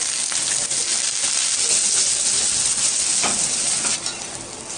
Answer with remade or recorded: recorded